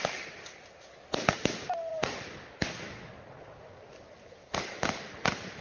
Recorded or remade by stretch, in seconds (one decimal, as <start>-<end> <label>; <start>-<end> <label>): 0.0-4.4 recorded; 4.4-5.0 remade; 5.0-5.6 recorded